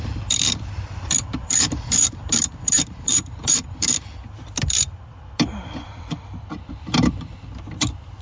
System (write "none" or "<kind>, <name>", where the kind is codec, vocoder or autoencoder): vocoder, BigVGAN v2